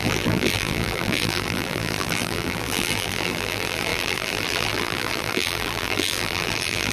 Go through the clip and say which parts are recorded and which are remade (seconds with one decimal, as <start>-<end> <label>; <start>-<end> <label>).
0.0-6.9 remade